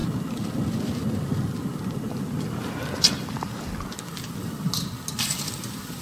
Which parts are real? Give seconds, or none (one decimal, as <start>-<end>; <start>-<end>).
0.0-6.0